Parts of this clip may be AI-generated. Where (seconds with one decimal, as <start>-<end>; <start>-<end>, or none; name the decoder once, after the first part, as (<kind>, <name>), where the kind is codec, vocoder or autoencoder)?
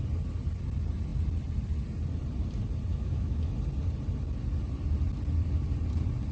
2.9-3.5 (autoencoder, DAC-VAE)